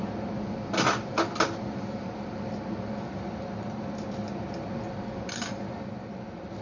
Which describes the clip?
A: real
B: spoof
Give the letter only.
A